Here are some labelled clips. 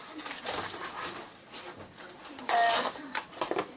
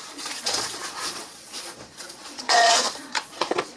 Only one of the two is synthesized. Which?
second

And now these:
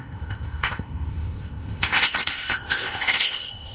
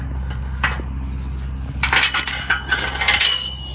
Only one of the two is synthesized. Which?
first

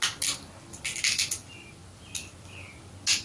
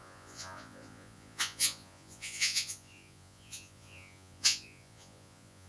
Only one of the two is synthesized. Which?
second